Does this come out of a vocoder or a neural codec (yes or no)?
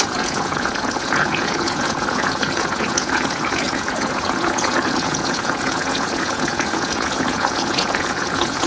yes